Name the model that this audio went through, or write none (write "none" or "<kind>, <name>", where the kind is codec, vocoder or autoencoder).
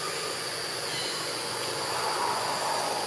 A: vocoder, Vocos